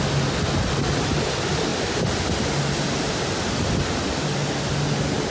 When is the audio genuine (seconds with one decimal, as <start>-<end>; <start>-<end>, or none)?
0.0-5.3